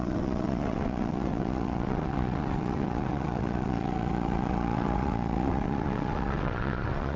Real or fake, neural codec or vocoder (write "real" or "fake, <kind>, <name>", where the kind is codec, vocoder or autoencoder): fake, vocoder, WaveNeXt